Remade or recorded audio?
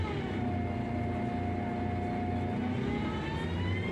recorded